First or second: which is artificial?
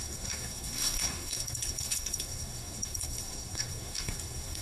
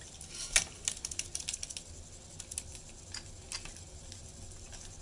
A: first